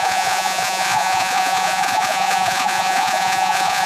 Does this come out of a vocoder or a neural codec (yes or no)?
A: yes